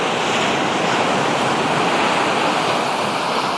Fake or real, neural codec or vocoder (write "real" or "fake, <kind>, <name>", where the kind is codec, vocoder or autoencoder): real